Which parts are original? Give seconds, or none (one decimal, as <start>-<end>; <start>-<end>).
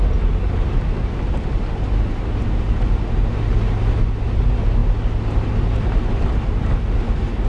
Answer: 0.0-7.5